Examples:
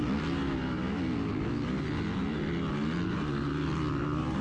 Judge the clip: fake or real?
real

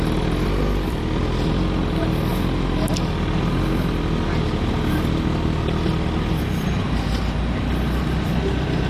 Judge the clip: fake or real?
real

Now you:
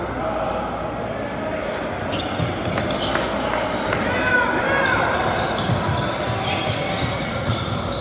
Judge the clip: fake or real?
real